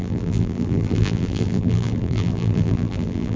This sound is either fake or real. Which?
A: fake